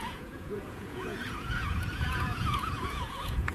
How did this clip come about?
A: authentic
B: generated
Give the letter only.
B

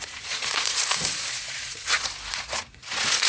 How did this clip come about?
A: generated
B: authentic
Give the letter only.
A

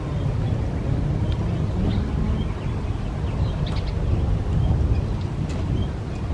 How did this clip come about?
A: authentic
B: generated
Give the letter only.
A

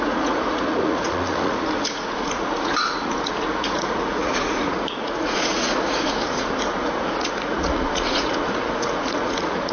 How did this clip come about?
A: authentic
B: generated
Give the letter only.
B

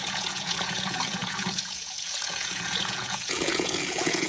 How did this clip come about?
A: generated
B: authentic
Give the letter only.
A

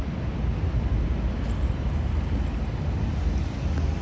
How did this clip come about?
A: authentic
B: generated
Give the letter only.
A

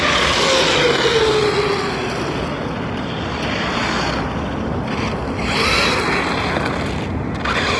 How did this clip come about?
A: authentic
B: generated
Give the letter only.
A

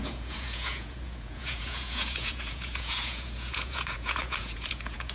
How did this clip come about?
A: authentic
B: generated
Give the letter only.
B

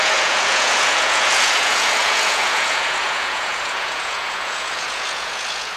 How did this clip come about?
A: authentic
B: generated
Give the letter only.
B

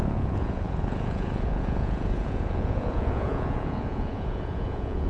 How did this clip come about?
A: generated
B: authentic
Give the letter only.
A